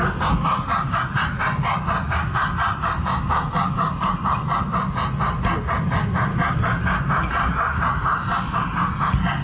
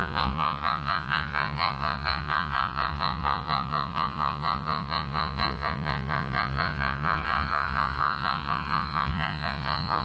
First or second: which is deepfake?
second